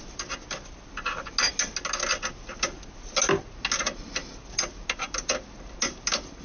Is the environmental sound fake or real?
real